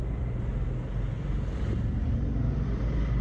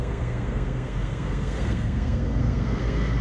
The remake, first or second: second